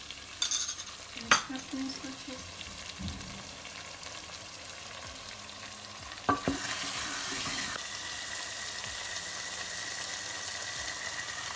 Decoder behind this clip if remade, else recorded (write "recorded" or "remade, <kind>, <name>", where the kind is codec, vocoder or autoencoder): recorded